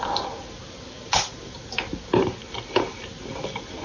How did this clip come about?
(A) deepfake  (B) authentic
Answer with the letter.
B